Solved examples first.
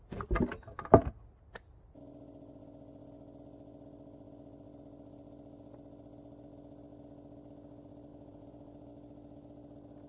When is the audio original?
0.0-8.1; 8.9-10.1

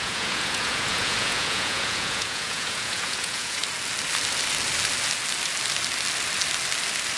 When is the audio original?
3.6-7.2

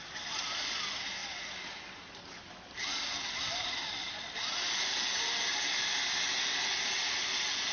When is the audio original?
0.0-7.7

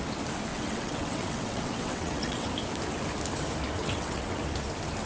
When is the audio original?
0.0-0.5; 2.5-3.8; 4.4-5.1

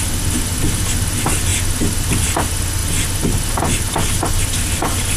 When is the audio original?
0.0-5.2